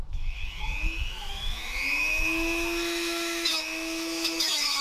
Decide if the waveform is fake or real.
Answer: fake